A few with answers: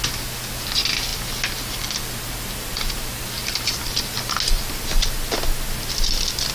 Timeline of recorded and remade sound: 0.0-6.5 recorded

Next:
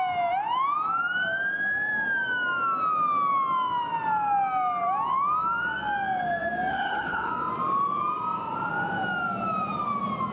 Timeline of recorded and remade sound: 0.0-6.7 recorded; 6.7-7.3 remade; 7.3-10.3 recorded

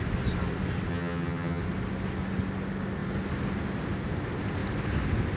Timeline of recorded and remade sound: 0.0-0.9 recorded; 0.9-1.6 remade; 1.6-5.4 recorded

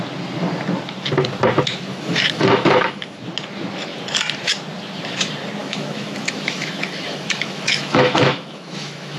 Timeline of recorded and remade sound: 0.0-1.9 recorded; 1.9-3.2 remade; 3.2-5.6 recorded; 5.6-9.2 remade